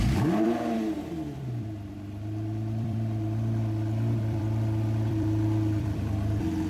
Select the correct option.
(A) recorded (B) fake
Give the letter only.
B